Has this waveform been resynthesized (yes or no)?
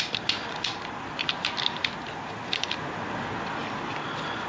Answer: no